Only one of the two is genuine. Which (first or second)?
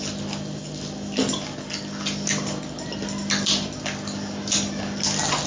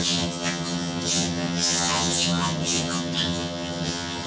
first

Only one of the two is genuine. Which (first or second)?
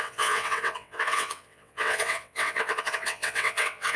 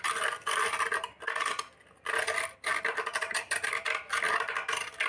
second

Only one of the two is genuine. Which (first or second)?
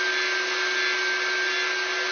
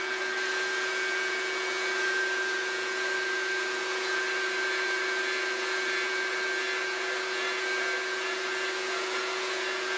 first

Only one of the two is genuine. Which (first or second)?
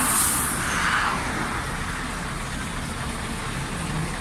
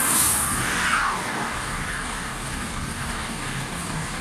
first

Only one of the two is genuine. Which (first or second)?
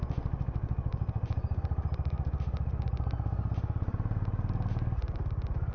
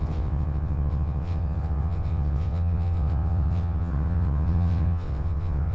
first